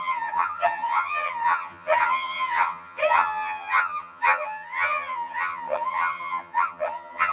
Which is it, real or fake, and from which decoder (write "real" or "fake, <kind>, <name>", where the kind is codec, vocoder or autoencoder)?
fake, vocoder, HiFi-GAN